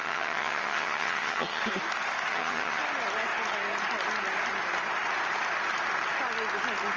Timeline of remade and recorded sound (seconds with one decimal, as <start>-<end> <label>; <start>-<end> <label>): 0.0-1.6 remade; 1.6-2.3 recorded; 2.3-2.8 remade; 2.8-7.0 recorded